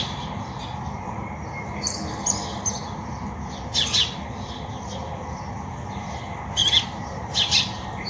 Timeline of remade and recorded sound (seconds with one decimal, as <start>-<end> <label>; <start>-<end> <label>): 0.0-8.1 recorded